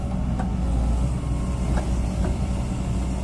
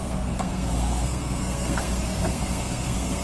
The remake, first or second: second